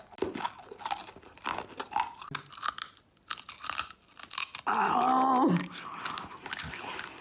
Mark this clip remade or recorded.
recorded